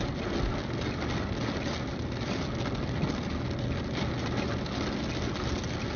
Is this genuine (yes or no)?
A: yes